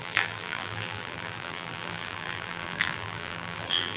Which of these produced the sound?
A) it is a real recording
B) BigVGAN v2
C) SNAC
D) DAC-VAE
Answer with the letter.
B